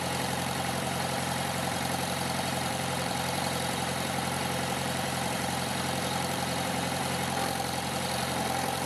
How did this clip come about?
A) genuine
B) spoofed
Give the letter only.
B